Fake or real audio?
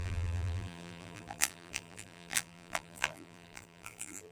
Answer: fake